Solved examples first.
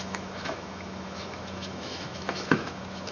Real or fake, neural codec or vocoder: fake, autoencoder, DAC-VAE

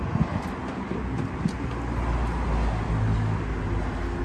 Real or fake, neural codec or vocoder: real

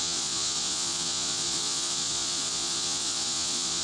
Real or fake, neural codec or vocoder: fake, vocoder, Vocos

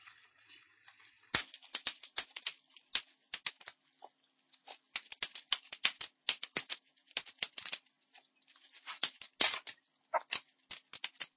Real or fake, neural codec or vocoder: real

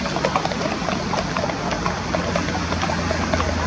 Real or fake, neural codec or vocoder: real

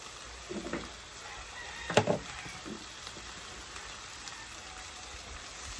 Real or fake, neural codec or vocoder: real